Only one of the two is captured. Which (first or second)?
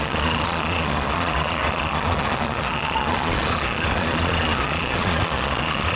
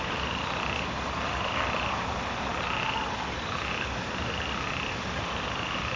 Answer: second